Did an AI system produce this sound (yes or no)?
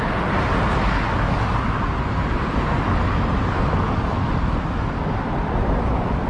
no